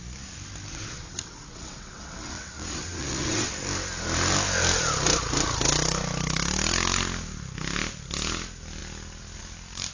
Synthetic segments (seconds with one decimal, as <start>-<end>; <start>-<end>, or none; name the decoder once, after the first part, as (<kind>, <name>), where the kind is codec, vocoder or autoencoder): 0.7-3.5 (vocoder, WaveNeXt)